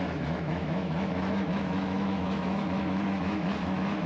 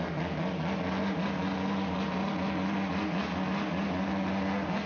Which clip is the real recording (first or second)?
second